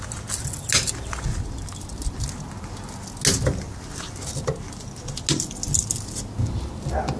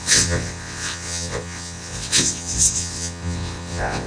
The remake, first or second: second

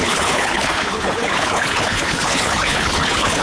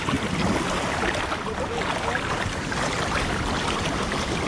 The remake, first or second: first